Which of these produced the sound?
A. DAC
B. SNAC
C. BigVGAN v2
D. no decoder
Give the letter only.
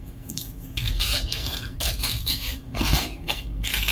B